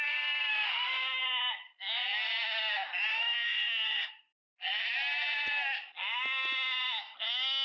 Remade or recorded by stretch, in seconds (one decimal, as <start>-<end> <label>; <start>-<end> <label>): 0.0-0.5 recorded; 0.5-1.2 remade; 1.2-3.1 recorded; 3.1-4.1 remade; 4.1-7.6 recorded